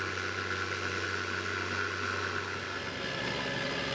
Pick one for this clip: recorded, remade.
recorded